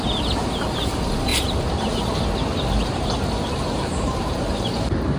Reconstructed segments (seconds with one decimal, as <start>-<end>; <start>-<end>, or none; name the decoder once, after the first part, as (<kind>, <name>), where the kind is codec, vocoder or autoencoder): 1.3-4.4 (vocoder, BigVGAN v2)